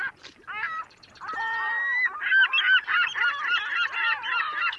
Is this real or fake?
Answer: real